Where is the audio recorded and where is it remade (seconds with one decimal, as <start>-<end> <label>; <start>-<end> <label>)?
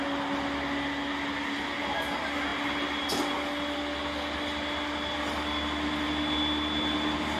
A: 0.0-7.4 recorded